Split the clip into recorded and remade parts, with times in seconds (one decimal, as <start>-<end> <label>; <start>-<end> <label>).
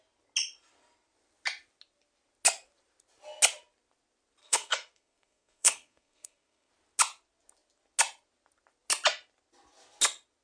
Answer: 0.0-4.4 recorded; 4.4-6.7 remade; 6.7-10.4 recorded